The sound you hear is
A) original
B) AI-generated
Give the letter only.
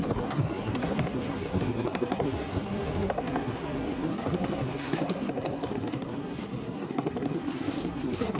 B